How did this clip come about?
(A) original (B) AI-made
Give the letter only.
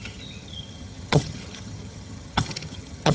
B